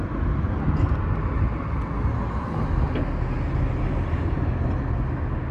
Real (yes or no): yes